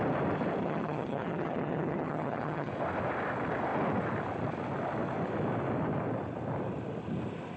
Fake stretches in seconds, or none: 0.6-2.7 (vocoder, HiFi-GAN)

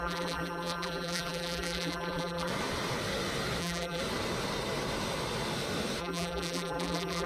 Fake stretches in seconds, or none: 0.0-2.5 (vocoder, BigVGAN v2); 3.6-4.0; 6.0-7.3

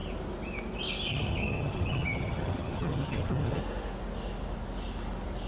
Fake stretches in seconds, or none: 1.1-3.6 (vocoder, HiFi-GAN)

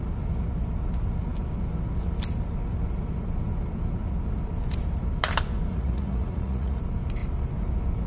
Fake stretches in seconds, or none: 5.7-6.8 (vocoder, Vocos)

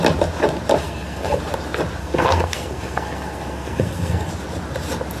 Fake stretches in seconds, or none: 0.8-1.4 (codec, SNAC); 2.0-4.3

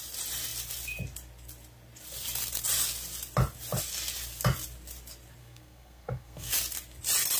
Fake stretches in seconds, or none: 5.4-6.5 (codec, SNAC)

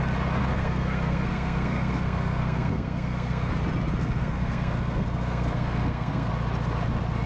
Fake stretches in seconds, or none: 0.4-3.5 (codec, SNAC); 4.0-6.3

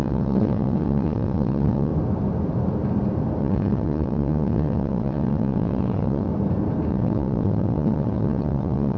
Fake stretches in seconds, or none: 0.0-1.9 (vocoder, WaveNeXt); 3.4-6.3; 6.9-9.0